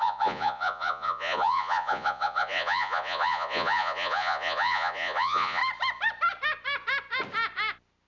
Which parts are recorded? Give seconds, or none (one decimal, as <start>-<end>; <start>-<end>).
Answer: 5.6-8.1